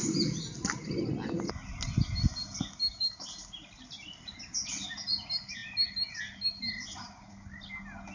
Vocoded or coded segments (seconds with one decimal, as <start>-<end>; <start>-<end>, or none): none